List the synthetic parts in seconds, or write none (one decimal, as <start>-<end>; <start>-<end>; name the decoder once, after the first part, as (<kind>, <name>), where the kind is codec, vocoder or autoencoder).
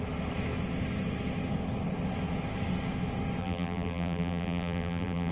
3.4-5.3 (vocoder, BigVGAN v2)